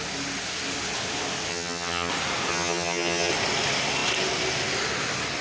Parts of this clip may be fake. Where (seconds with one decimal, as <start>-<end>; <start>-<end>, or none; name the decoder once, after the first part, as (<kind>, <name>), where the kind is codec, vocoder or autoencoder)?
1.5-2.1 (vocoder, HiFi-GAN); 2.5-3.3

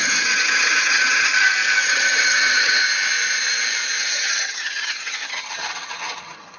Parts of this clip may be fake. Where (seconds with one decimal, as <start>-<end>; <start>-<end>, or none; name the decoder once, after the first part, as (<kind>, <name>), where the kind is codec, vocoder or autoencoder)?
0.0-1.3 (vocoder, HiFi-GAN); 1.8-2.8; 4.0-6.6

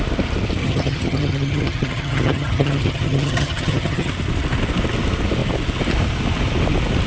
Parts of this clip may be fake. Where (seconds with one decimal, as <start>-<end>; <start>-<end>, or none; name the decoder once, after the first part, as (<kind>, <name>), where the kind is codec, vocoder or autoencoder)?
0.6-4.1 (vocoder, HiFi-GAN)